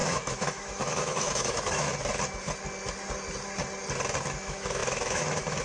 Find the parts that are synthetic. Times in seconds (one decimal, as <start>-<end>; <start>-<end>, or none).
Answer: 0.0-1.9; 4.3-5.6